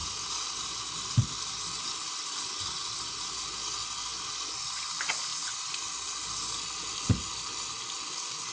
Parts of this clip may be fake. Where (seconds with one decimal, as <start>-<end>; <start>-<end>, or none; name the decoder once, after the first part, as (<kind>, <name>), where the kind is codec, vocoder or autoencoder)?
0.0-3.4 (vocoder, BigVGAN v2); 4.1-4.8; 5.3-5.9